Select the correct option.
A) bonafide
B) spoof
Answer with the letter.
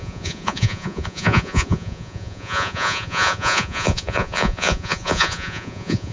B